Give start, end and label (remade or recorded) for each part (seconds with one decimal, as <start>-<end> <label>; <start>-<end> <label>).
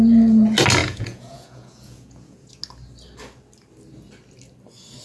0.0-0.8 recorded; 0.8-2.5 remade; 2.5-5.0 recorded